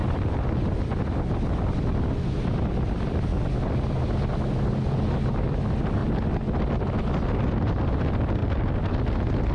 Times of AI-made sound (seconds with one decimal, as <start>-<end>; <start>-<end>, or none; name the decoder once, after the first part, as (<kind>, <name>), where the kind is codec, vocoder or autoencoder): none